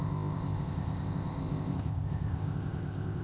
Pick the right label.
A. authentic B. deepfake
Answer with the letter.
B